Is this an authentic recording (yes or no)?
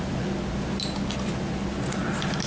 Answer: yes